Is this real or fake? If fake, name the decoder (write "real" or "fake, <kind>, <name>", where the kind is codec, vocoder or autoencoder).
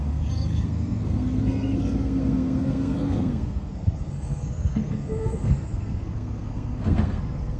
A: fake, codec, SNAC